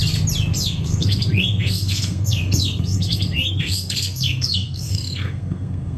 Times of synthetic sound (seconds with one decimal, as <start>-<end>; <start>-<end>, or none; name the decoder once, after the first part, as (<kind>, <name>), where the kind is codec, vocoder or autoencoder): 0.6-6.0 (codec, SNAC)